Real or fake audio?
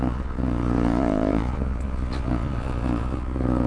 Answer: fake